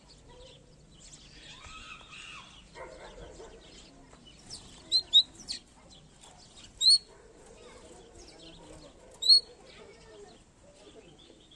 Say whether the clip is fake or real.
real